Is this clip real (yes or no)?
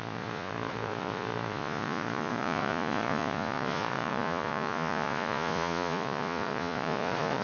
no